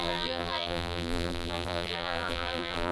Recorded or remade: remade